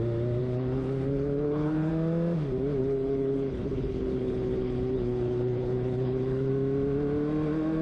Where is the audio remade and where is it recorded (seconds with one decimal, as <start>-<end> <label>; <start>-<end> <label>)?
0.0-0.4 recorded; 0.4-1.9 remade; 1.9-2.8 recorded; 2.8-6.5 remade; 6.5-7.8 recorded